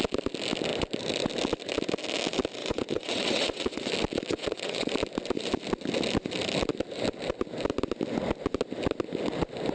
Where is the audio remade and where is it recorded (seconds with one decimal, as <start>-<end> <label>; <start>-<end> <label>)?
0.0-2.6 recorded; 2.6-3.9 remade; 3.9-4.3 recorded; 4.3-4.9 remade; 4.9-9.7 recorded